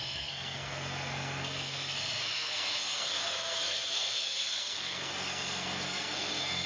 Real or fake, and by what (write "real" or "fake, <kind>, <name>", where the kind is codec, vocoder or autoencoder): fake, codec, SNAC